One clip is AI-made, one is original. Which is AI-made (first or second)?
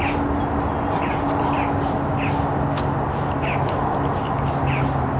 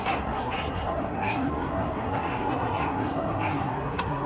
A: second